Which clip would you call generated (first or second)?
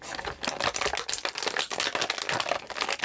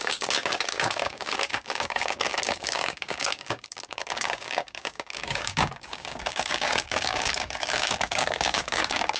second